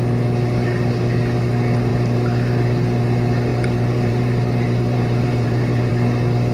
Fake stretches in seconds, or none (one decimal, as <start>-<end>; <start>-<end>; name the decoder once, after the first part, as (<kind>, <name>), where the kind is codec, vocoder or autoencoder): 1.9-3.0 (vocoder, BigVGAN v2); 3.5-5.9